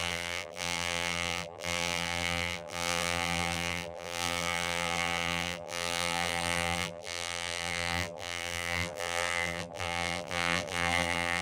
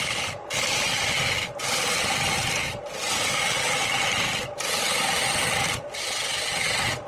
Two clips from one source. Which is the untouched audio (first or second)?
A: second